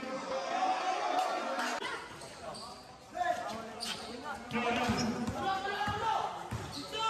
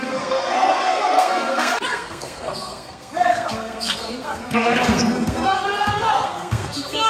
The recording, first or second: first